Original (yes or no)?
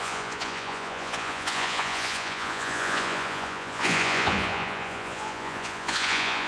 no